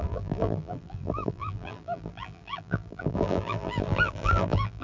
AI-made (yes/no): yes